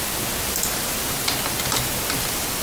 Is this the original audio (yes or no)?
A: yes